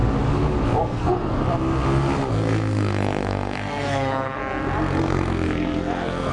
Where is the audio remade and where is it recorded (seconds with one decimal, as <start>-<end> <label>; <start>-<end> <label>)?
0.0-0.8 recorded; 0.8-1.4 remade; 1.4-2.3 recorded; 2.3-4.4 remade; 4.4-5.0 recorded; 5.0-6.3 remade